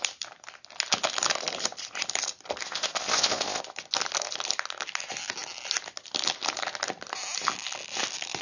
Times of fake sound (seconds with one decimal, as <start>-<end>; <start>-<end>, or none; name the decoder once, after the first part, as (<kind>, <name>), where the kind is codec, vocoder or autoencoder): 2.6-3.6 (codec, ZipCodec)